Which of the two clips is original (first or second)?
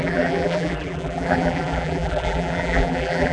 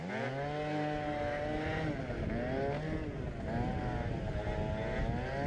second